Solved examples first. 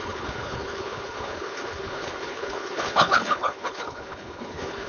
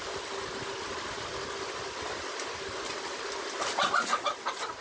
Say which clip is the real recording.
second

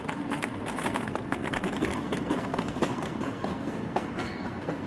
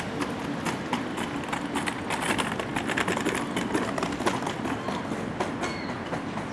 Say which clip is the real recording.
second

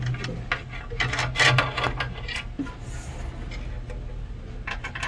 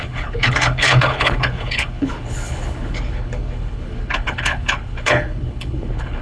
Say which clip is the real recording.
first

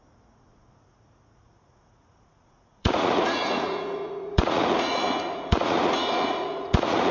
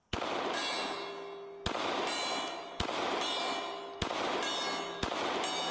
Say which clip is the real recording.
second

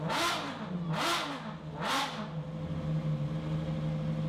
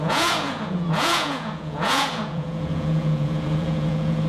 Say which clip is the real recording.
first